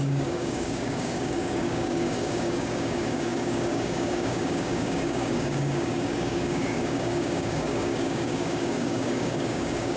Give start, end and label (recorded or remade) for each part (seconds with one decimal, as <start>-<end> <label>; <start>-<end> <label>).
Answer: 0.0-10.0 remade